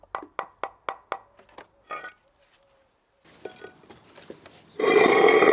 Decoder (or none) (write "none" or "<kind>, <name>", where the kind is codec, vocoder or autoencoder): none